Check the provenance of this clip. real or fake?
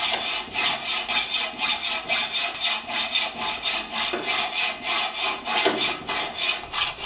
real